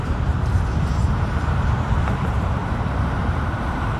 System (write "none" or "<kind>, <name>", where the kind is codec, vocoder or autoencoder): vocoder, BigVGAN v2